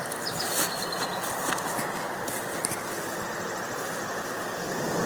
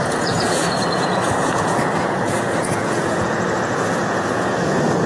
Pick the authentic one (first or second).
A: first